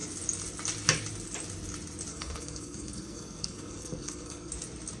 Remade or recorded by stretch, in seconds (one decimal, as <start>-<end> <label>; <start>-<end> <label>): 0.0-2.1 recorded; 2.1-4.5 remade; 4.5-5.0 recorded